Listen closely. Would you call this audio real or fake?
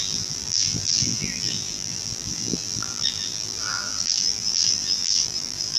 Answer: fake